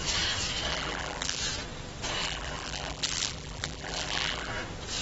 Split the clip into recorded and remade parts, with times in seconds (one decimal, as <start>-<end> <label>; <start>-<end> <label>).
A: 0.0-0.7 recorded; 0.7-1.4 remade; 1.4-2.2 recorded; 2.2-4.5 remade; 4.5-5.0 recorded